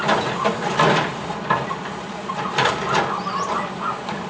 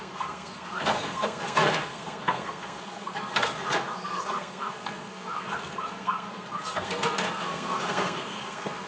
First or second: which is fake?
second